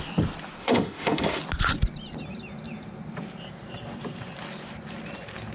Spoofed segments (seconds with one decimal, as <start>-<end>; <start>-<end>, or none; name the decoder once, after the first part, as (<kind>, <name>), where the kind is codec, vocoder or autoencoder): 0.6-1.4 (autoencoder, DAC-VAE)